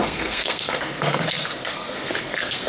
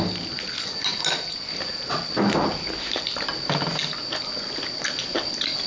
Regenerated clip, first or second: first